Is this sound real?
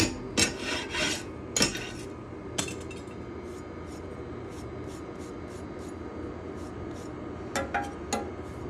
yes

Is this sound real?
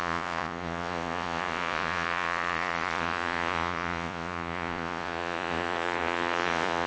no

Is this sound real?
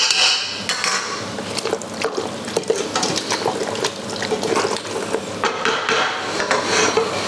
yes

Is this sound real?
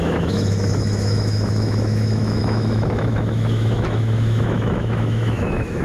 no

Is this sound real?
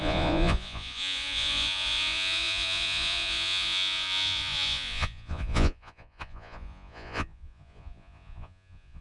no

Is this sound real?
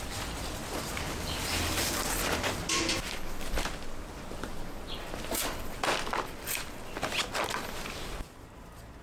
yes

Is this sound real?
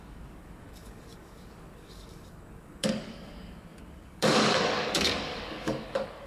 no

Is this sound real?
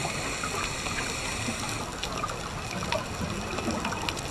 yes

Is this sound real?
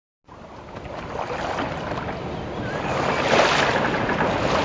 yes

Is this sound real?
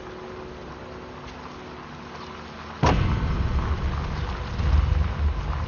yes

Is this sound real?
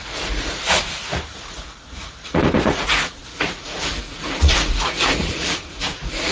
no